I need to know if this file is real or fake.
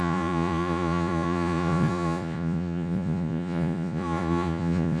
fake